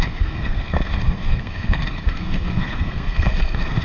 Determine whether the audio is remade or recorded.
remade